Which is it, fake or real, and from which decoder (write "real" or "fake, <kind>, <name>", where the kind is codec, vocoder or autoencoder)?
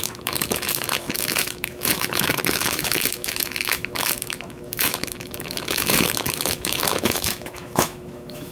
fake, autoencoder, DAC-VAE